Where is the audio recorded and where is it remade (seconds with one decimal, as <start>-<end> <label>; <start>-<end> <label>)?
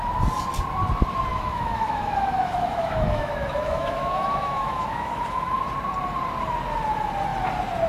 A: 0.0-1.3 recorded; 1.3-5.6 remade; 5.6-7.9 recorded